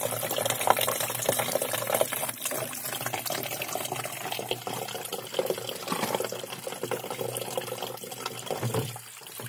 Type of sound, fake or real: real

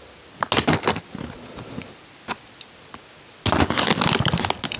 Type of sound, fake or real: real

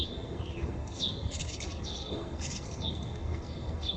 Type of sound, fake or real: fake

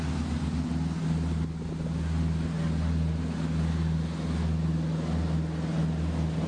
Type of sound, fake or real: real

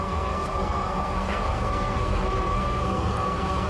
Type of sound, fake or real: fake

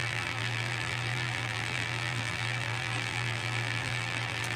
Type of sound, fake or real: fake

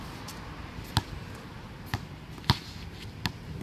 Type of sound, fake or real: real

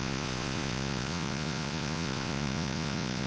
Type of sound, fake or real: fake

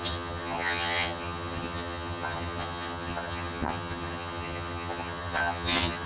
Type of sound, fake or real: fake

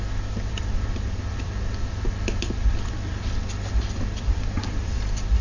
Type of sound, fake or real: fake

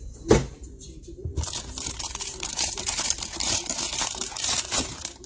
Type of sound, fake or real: fake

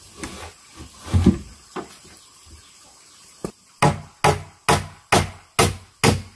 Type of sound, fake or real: real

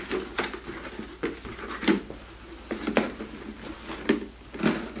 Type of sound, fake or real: real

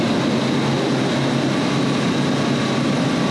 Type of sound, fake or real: real